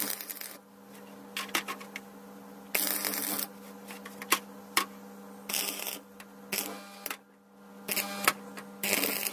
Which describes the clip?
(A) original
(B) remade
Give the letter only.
A